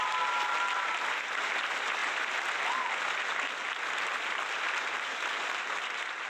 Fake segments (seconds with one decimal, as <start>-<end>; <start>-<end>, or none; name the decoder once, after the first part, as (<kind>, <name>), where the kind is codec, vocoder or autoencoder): none